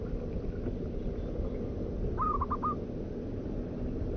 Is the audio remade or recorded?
recorded